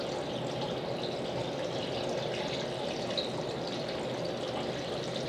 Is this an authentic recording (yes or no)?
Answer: yes